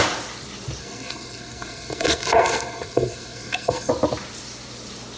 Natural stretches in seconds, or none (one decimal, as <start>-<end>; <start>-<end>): 0.0-0.8; 3.9-5.2

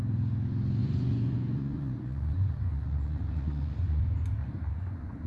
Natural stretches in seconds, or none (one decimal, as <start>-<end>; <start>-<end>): 0.0-0.8; 4.0-4.4

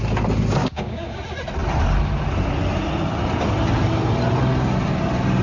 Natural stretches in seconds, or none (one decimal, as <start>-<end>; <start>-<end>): 0.0-0.6; 1.2-5.4

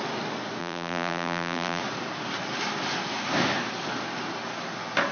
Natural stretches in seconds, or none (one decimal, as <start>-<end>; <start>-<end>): 0.0-0.6; 1.8-5.1

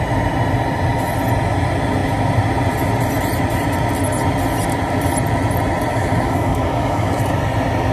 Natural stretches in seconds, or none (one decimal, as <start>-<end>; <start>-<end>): 0.0-5.9; 7.1-7.9

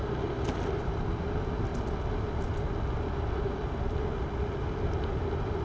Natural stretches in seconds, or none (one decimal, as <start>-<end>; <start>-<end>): 0.0-5.6

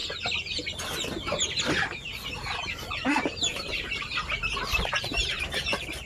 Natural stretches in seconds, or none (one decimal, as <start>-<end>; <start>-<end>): 0.0-1.6; 2.5-3.1

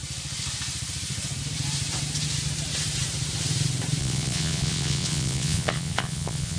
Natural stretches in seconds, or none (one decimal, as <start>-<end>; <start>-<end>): 0.0-4.0